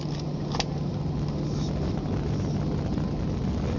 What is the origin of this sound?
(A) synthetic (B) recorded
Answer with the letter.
B